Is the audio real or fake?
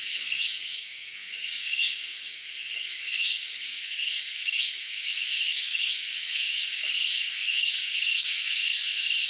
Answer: fake